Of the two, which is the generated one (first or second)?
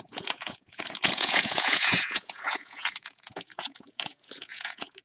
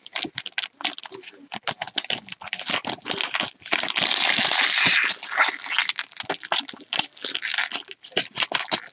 first